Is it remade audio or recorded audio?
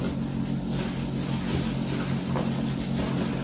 recorded